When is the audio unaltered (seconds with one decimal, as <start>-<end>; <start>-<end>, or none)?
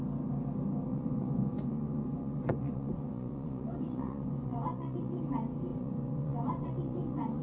0.0-0.9; 5.2-5.7